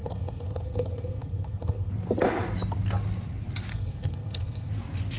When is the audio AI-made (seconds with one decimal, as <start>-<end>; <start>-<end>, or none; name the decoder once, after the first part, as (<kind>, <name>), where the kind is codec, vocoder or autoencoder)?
0.0-1.9 (codec, SNAC); 3.7-4.7